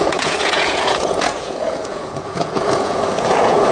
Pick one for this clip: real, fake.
fake